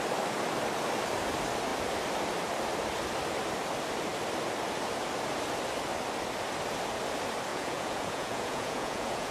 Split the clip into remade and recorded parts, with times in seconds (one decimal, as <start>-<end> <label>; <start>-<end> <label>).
0.0-7.5 recorded; 7.5-9.3 remade